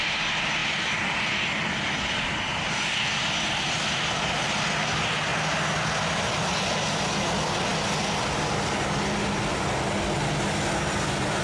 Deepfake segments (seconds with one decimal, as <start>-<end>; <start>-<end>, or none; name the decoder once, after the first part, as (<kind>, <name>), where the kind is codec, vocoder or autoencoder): none

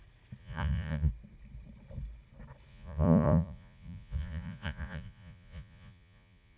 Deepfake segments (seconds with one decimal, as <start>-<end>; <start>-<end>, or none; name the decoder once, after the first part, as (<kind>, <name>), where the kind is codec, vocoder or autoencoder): 0.4-1.1 (vocoder, Vocos); 2.7-6.6

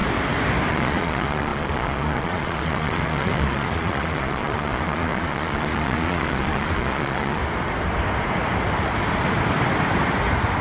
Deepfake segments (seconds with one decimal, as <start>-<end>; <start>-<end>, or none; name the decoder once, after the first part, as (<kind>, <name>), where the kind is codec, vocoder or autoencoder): 0.7-7.4 (vocoder, Vocos)

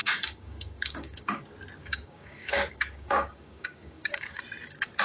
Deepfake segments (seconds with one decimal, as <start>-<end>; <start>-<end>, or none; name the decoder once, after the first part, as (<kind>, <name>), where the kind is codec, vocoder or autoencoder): 0.0-1.4 (codec, DAC); 1.8-4.4

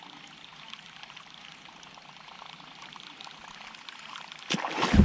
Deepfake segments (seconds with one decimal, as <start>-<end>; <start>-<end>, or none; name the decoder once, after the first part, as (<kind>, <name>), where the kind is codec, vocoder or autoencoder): 0.5-3.5 (vocoder, BigVGAN v2)

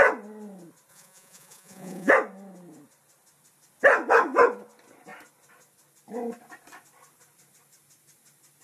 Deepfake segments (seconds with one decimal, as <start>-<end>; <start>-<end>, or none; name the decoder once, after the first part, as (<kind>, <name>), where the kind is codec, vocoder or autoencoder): 0.9-2.1 (vocoder, Vocos)